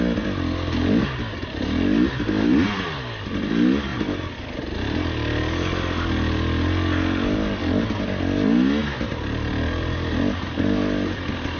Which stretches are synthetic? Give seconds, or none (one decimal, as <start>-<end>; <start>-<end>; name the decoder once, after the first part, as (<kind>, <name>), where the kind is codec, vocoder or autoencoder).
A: none